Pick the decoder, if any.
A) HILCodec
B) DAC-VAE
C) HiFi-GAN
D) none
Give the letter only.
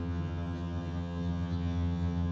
C